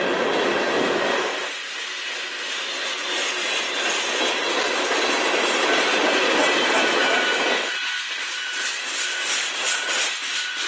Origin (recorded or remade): recorded